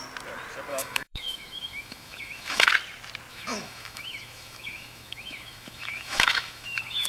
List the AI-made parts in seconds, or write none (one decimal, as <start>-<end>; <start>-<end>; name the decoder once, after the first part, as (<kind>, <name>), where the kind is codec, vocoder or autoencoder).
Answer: 0.7-2.7 (autoencoder, DAC-VAE); 3.3-7.1